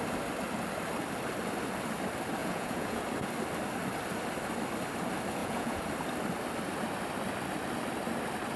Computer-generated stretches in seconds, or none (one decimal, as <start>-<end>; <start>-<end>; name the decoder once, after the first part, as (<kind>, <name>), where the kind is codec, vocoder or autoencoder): 2.4-3.0 (vocoder, Vocos); 5.4-5.9